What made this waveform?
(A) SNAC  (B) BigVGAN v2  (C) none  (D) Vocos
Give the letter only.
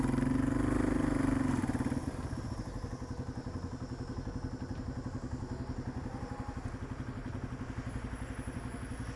C